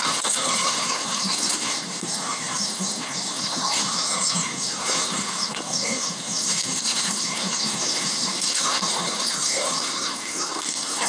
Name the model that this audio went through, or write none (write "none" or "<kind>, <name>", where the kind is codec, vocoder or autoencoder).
codec, SNAC